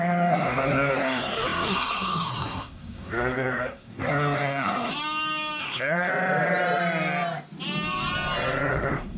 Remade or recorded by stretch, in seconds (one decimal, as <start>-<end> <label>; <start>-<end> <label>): 0.0-4.9 remade; 4.9-5.6 recorded; 5.6-6.1 remade; 6.1-8.7 recorded; 8.7-9.2 remade